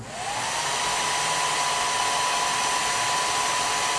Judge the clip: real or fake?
real